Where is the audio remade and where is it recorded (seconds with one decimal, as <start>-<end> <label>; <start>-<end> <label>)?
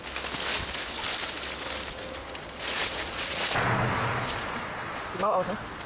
0.0-2.2 recorded; 2.2-5.1 remade; 5.1-5.9 recorded